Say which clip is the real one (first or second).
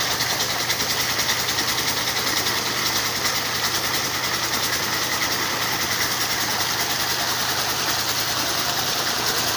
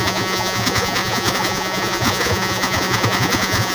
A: first